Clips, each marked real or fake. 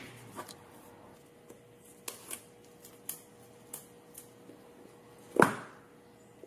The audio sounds real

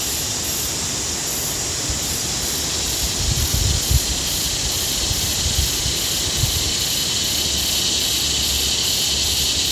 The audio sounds real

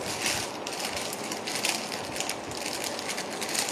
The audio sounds real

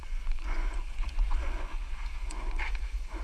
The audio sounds fake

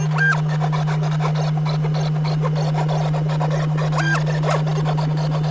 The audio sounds real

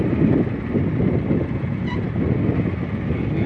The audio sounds real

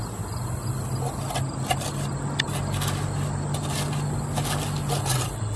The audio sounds real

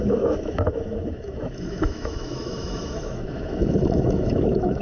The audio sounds fake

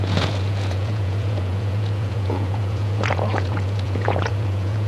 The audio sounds fake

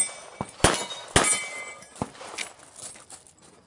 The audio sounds real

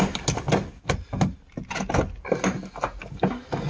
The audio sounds real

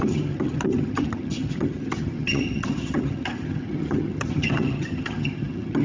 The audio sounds fake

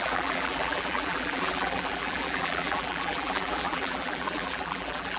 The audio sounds fake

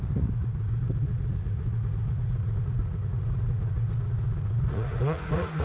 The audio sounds fake